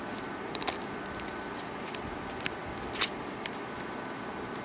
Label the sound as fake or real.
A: real